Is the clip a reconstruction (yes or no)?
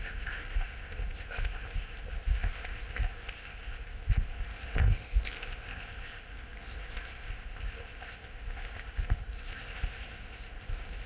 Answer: yes